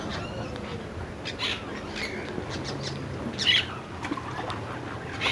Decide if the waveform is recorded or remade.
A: recorded